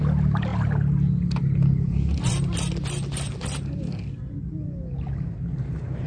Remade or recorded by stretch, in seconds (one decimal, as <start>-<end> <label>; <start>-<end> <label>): 0.0-6.1 recorded